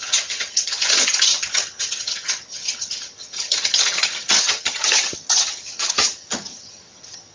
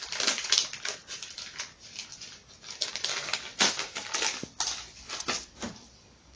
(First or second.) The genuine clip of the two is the second